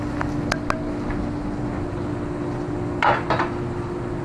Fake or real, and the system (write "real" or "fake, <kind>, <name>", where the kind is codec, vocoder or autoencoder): real